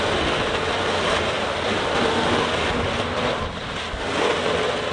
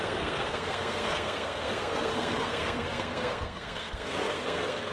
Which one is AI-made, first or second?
second